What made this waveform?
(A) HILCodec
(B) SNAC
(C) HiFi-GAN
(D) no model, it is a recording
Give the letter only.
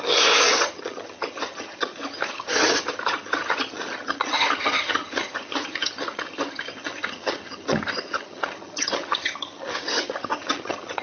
C